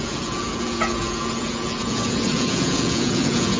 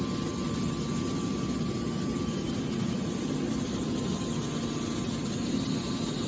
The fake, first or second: first